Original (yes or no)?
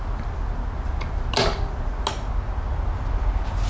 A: yes